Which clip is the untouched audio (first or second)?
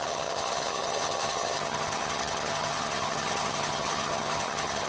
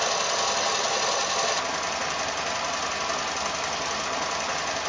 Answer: second